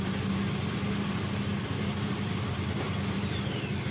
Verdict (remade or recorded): recorded